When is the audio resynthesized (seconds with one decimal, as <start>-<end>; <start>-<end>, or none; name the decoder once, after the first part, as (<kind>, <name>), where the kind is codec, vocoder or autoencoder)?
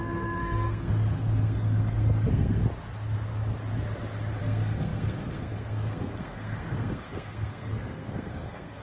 0.0-2.6 (codec, SNAC); 4.4-8.8